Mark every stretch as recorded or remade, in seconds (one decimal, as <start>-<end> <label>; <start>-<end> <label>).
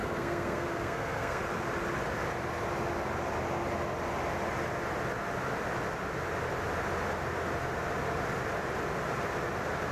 0.0-1.4 remade; 1.4-9.9 recorded